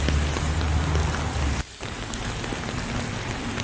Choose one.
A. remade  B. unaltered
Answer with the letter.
B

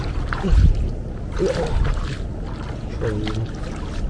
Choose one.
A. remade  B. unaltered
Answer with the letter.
B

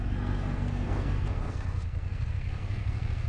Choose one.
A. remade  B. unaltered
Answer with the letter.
A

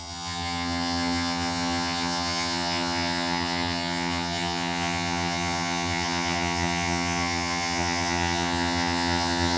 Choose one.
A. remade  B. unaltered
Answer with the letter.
A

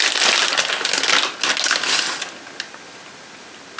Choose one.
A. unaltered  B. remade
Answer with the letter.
A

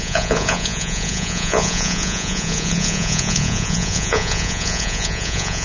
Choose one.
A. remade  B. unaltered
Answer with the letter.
A